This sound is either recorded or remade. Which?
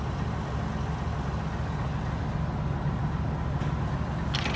recorded